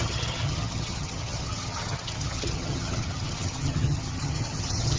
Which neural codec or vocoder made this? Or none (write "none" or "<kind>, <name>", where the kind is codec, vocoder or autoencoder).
vocoder, HiFi-GAN